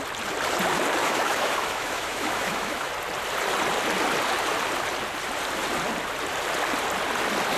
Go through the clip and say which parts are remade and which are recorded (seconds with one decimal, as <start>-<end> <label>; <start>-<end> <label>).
0.0-1.0 recorded; 1.0-2.9 remade; 2.9-7.6 recorded